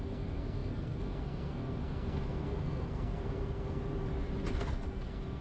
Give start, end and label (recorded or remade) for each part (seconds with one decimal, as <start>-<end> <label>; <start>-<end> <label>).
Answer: 0.0-3.8 remade; 3.8-4.5 recorded; 4.5-5.4 remade